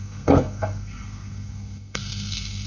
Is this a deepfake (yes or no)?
yes